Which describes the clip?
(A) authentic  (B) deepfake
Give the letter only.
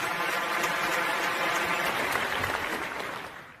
A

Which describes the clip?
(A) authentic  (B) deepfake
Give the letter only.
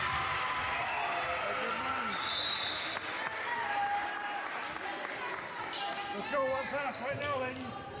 A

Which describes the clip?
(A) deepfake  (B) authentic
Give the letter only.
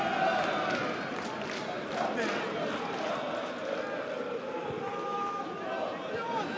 B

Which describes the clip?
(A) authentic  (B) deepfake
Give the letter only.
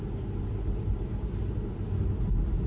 A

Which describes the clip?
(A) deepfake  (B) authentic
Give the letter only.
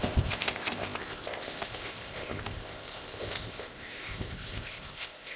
A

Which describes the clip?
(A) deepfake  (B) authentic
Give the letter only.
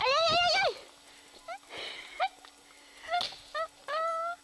B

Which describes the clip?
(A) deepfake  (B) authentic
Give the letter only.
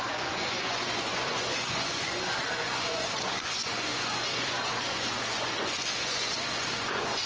A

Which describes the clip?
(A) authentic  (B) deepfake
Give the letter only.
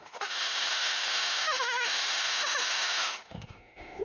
B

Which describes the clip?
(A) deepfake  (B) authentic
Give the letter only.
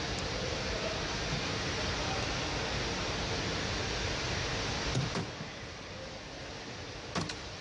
B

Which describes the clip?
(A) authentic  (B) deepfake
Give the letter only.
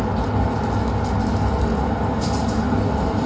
A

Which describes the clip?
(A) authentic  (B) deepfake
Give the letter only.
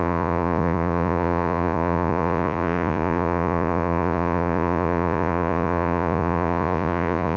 B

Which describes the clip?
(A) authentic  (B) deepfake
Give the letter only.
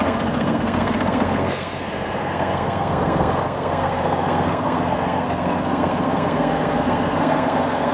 B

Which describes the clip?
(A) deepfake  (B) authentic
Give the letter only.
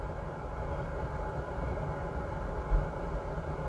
B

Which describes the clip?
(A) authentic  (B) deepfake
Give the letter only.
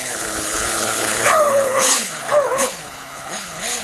B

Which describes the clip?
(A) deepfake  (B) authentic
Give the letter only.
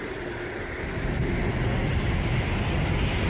B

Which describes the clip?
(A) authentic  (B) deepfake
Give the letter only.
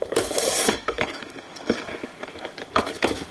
B